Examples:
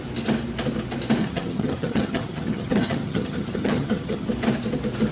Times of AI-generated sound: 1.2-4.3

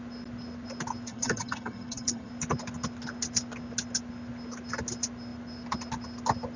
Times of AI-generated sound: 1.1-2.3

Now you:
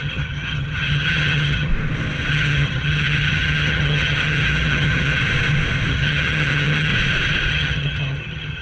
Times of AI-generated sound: 0.0-1.7; 2.3-5.2; 5.9-6.9; 7.5-8.6

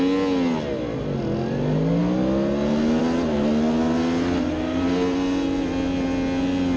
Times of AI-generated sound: none